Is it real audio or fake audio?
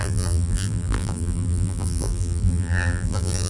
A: fake